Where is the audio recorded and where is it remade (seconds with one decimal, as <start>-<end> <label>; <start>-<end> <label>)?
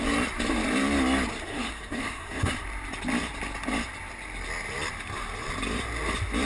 0.0-1.3 recorded; 1.3-2.5 remade; 2.5-6.5 recorded